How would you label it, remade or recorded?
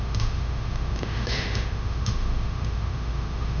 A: remade